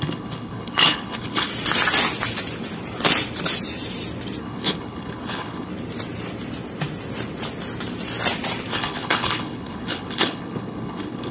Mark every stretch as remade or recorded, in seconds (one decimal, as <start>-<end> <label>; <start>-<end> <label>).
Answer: 0.0-1.5 remade; 1.5-4.4 recorded; 4.4-5.7 remade; 5.7-8.7 recorded; 8.7-11.3 remade